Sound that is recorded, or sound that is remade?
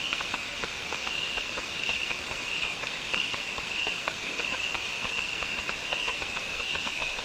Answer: remade